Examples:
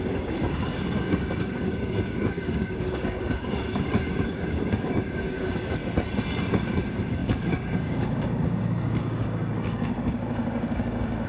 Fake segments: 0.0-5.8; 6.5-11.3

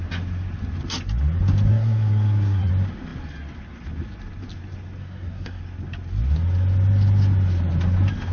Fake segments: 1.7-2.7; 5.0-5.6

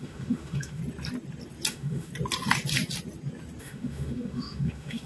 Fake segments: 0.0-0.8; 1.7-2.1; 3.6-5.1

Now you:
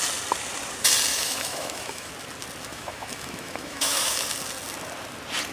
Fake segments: 1.1-2.1; 2.7-4.2

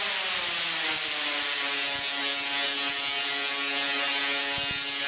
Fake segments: none